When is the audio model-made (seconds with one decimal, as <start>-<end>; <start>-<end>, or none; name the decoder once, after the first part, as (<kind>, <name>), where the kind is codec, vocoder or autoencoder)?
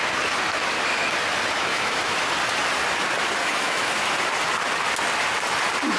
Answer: 1.7-2.3 (autoencoder, DAC-VAE); 3.4-4.0